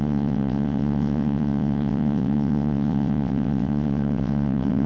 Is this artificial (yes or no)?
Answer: yes